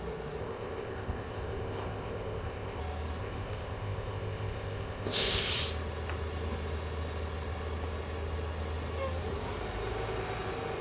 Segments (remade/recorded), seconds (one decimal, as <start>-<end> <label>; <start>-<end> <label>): 0.0-0.4 recorded; 0.4-2.8 remade; 2.8-3.2 recorded; 3.2-5.5 remade; 5.5-10.8 recorded